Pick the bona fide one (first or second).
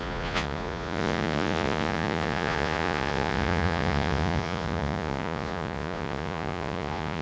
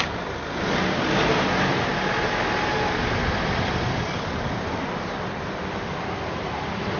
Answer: second